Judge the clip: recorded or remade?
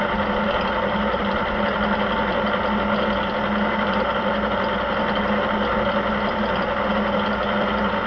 recorded